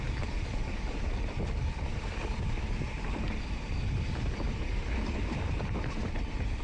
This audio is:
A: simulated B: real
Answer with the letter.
A